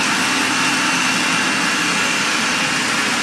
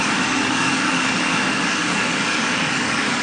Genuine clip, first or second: first